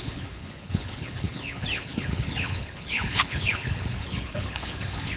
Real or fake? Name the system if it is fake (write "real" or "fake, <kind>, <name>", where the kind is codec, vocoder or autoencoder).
fake, codec, HILCodec